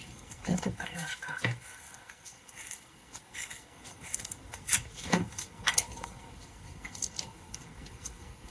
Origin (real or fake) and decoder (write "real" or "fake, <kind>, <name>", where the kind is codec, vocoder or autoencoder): fake, codec, SNAC